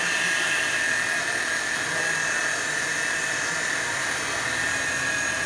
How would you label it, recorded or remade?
recorded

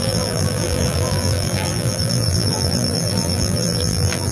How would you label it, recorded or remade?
remade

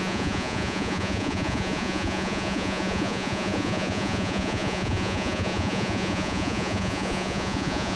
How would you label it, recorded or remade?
remade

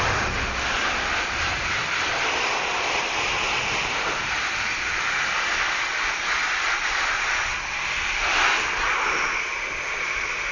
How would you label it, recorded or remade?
recorded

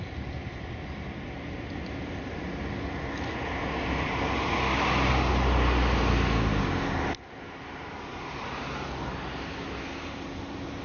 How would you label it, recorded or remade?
recorded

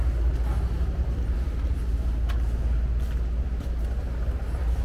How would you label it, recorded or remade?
recorded